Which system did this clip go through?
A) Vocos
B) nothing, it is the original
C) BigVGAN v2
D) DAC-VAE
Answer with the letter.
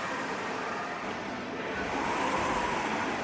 B